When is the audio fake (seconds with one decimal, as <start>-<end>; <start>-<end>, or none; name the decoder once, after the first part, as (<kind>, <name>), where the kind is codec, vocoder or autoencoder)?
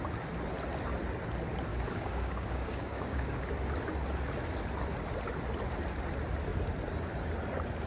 1.7-3.5 (codec, DAC)